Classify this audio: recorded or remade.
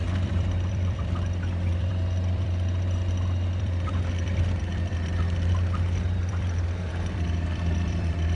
remade